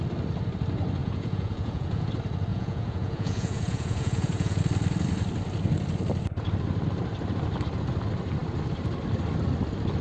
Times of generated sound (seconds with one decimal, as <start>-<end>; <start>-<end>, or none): 1.0-2.1; 2.5-4.6